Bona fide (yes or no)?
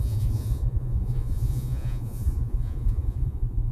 no